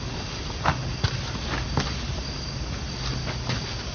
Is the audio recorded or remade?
recorded